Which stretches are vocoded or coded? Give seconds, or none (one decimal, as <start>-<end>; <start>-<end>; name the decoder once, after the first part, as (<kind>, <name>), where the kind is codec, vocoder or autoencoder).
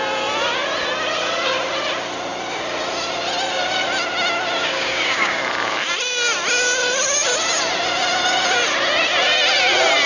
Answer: 4.6-5.4 (codec, DAC)